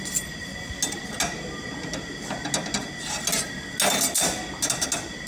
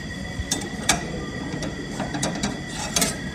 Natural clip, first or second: first